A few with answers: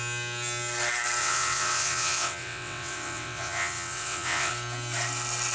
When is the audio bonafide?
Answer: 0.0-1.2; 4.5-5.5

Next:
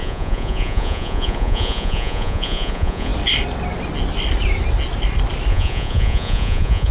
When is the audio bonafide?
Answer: 3.1-5.5